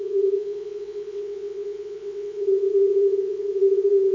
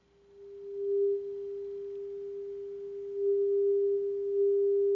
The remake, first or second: first